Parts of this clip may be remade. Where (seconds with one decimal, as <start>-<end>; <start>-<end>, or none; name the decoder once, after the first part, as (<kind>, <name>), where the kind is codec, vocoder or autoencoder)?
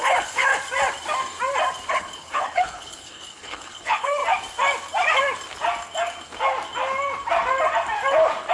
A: 0.0-0.5 (codec, HILCodec); 1.9-4.2